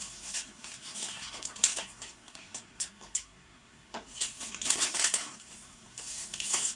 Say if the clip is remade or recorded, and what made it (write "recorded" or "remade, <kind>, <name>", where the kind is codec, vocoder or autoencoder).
remade, codec, SNAC